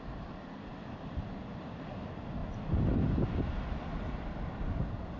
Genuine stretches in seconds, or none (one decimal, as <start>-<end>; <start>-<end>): 0.0-5.2